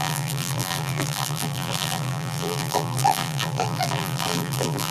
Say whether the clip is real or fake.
fake